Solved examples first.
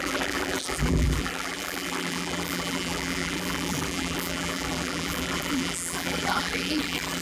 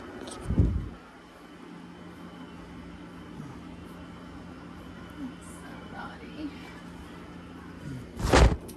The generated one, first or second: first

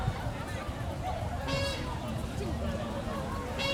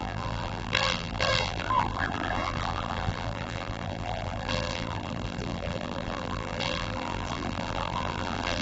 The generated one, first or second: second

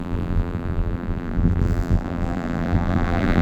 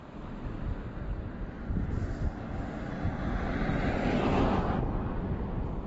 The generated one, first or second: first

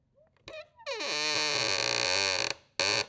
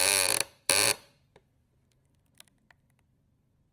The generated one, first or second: second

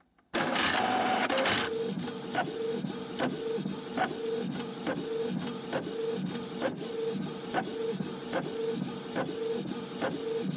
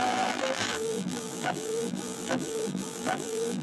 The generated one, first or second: second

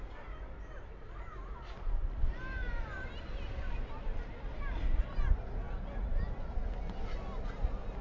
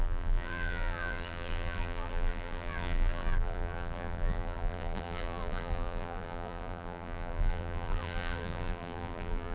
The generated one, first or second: second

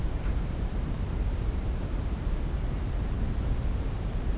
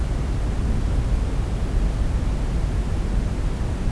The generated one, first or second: first